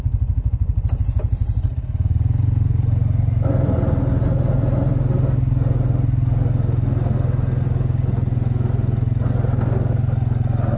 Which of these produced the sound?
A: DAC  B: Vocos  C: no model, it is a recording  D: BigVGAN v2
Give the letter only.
C